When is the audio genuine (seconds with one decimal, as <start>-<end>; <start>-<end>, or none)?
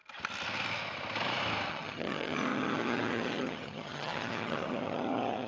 0.0-1.7